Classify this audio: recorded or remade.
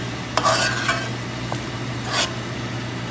recorded